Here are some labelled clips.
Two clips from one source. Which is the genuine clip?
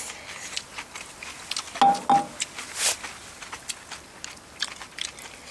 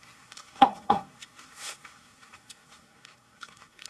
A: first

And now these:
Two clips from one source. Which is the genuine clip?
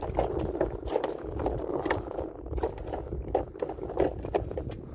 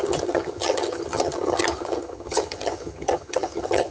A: first